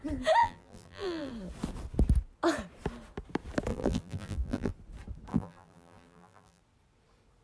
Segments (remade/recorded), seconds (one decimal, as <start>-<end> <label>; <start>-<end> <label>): 0.0-0.4 recorded; 0.4-1.3 remade; 1.3-3.7 recorded; 3.7-4.7 remade; 4.7-5.3 recorded; 5.3-6.6 remade; 6.6-7.4 recorded